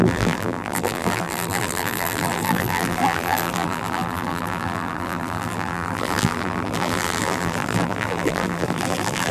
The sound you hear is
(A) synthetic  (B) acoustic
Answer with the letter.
A